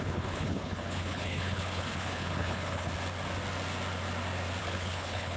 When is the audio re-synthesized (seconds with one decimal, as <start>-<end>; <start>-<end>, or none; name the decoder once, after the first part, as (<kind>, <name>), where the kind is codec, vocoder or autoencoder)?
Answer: 0.0-2.9 (codec, HILCodec); 4.6-5.4